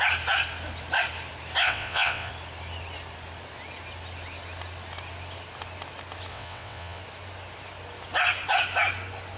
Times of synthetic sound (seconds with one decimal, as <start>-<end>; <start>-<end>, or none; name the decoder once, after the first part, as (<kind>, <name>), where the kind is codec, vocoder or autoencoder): 1.6-2.3 (vocoder, WaveNeXt); 6.3-7.0